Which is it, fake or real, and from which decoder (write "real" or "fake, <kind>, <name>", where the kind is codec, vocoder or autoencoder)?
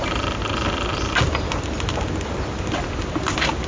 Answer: real